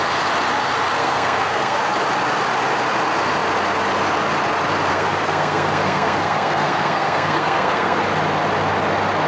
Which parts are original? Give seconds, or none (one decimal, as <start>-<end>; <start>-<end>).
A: 0.0-1.0; 1.8-4.9; 8.0-9.3